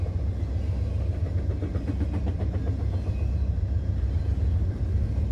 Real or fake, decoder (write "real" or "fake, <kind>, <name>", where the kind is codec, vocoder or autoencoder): real